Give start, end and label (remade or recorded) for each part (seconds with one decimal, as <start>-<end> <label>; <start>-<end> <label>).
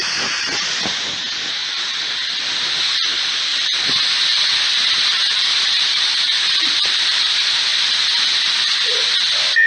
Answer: 0.0-3.5 recorded; 3.5-7.3 remade; 7.3-9.7 recorded